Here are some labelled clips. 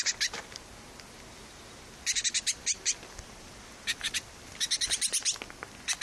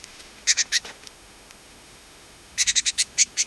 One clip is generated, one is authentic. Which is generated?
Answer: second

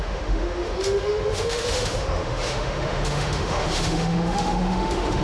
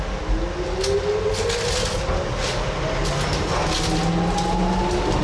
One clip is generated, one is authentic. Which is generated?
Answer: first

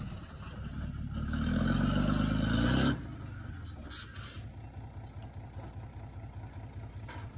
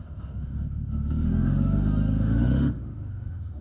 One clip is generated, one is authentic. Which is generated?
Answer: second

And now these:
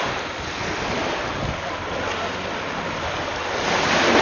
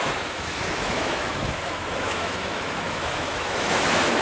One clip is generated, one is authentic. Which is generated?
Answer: second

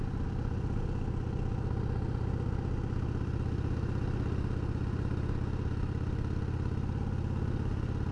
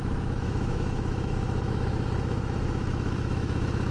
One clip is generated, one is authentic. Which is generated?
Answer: second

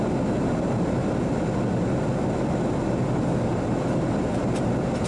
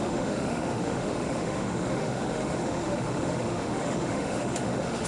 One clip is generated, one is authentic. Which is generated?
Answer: second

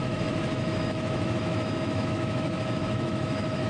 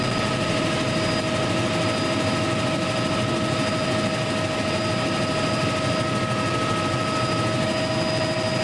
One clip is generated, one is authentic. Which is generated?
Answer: first